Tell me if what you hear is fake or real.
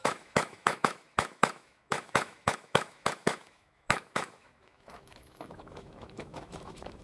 fake